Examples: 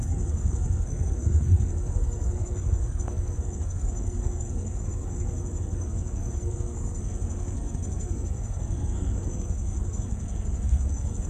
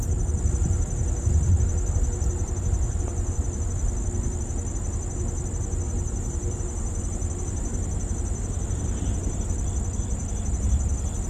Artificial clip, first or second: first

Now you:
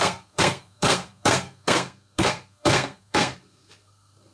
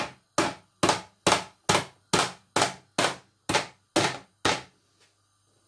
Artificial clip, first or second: first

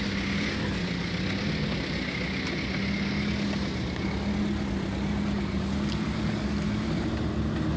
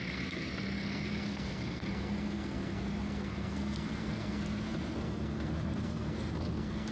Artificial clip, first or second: second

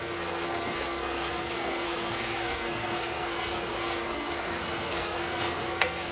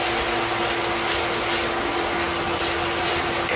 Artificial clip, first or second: first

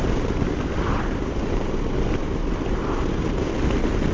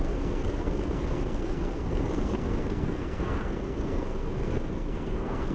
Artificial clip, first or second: second